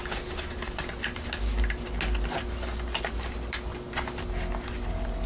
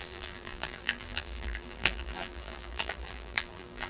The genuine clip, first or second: first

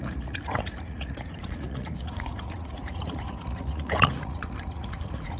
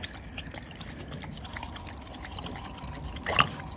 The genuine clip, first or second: second